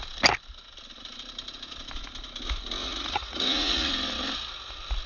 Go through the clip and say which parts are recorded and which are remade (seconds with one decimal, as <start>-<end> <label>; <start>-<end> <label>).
0.0-2.8 recorded; 2.8-3.9 remade; 3.9-5.1 recorded